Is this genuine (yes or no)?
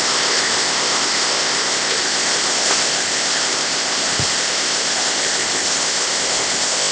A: no